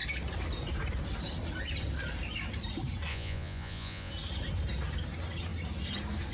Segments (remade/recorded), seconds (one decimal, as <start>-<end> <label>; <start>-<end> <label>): 0.0-3.1 recorded; 3.1-4.1 remade; 4.1-6.3 recorded